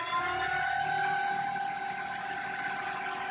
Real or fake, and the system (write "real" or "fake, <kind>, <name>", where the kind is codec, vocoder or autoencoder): real